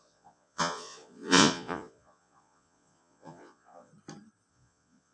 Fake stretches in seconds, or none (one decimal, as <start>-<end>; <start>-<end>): 0.0-3.9; 4.5-5.1